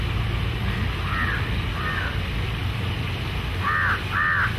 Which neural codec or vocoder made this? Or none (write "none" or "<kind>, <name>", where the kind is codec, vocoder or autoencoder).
none